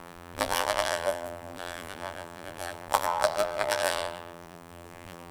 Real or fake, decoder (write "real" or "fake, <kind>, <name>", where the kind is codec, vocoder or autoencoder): fake, vocoder, BigVGAN v2